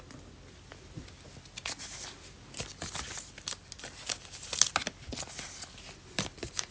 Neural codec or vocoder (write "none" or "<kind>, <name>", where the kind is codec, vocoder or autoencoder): none